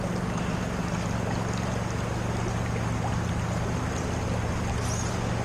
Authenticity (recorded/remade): recorded